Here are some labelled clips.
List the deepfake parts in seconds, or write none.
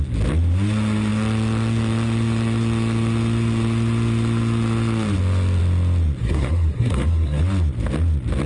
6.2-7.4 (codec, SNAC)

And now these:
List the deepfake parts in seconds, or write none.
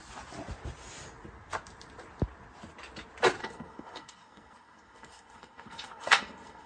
3.4-6.7 (codec, SNAC)